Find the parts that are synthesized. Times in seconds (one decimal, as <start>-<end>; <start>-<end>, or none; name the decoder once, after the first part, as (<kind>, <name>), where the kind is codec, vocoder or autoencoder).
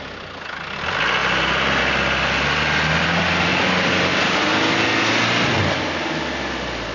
1.2-1.8 (vocoder, BigVGAN v2); 3.5-4.5